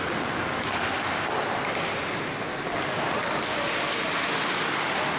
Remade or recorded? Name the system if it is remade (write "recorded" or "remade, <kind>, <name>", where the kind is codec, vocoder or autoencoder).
recorded